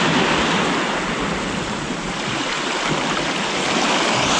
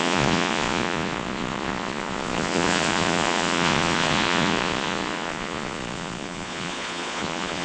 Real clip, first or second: first